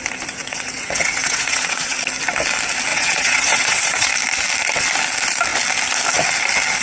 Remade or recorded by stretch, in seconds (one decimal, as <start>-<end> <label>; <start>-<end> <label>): 0.0-0.4 recorded; 0.4-2.0 remade; 2.0-2.9 recorded; 2.9-4.1 remade; 4.1-6.8 recorded